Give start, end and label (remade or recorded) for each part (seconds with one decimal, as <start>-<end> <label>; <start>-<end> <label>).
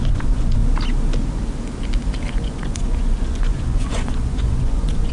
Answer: 0.0-0.6 remade; 0.6-2.3 recorded; 2.3-5.1 remade